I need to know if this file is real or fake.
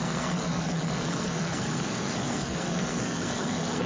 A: fake